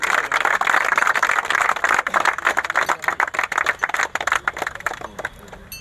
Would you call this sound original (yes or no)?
yes